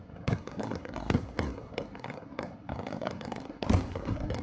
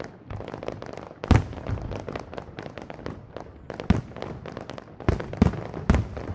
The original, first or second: second